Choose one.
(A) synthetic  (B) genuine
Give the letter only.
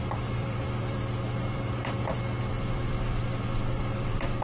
A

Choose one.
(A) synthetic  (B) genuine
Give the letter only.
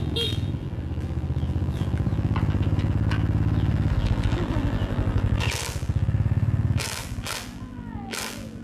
A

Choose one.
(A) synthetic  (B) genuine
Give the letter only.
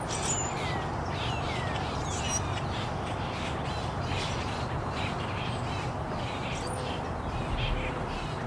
B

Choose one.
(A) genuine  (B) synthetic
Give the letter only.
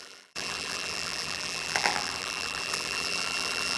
B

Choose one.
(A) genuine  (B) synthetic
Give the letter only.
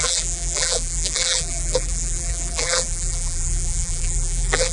B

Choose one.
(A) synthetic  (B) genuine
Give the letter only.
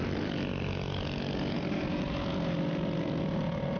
B